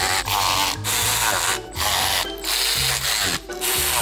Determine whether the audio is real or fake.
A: real